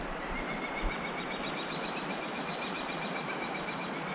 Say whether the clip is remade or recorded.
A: recorded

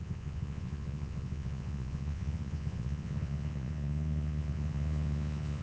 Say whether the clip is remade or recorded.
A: remade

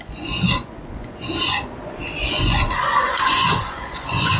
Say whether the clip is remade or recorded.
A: remade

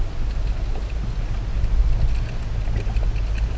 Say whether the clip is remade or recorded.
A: recorded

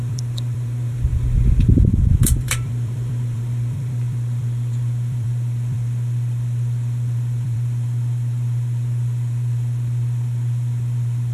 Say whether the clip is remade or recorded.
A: remade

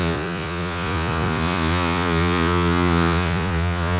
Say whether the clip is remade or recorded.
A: remade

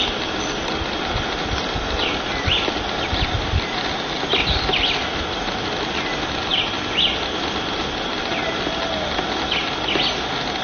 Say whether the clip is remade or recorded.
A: recorded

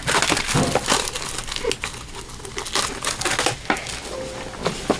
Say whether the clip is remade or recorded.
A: recorded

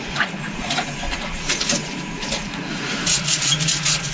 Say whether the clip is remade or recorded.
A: remade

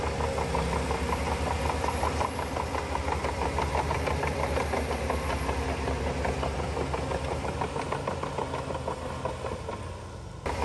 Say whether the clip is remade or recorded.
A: recorded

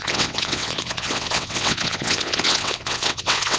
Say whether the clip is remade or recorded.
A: remade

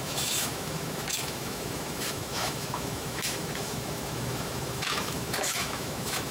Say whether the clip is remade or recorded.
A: remade